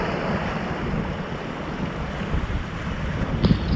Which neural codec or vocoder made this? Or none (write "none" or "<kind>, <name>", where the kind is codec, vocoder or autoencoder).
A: none